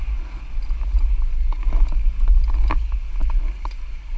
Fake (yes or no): no